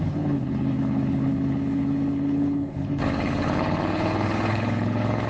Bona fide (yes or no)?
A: no